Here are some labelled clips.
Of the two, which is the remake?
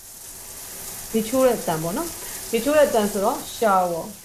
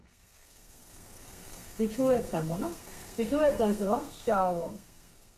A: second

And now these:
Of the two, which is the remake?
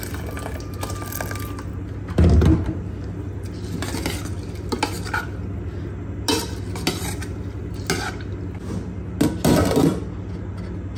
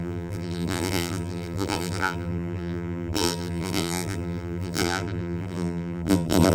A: second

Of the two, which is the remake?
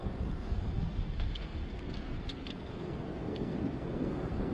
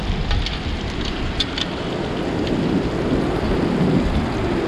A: first